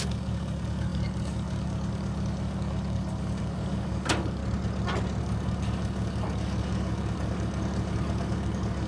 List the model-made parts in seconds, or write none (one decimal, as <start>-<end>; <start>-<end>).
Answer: 0.0-4.4; 5.2-8.9